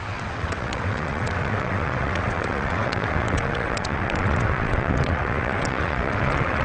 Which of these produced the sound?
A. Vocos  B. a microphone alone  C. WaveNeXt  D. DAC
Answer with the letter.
C